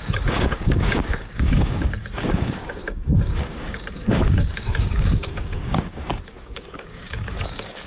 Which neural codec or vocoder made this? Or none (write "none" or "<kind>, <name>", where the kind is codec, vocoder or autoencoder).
codec, DAC